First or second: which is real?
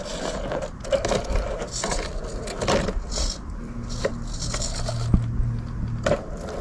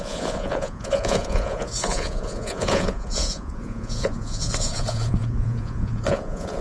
first